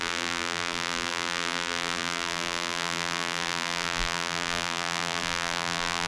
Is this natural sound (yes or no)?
no